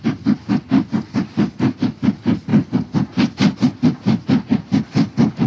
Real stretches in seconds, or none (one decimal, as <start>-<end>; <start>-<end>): 0.0-5.5